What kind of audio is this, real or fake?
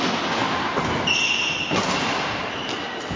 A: real